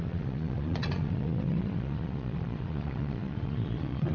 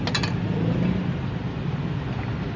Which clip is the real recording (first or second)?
second